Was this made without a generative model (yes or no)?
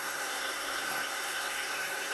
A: no